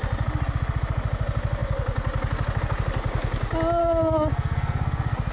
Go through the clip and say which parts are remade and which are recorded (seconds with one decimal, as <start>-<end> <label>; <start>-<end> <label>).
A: 0.0-3.8 recorded; 3.8-5.3 remade